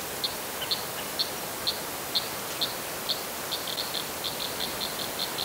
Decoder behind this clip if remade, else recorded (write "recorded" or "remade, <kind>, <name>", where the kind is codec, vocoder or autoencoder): recorded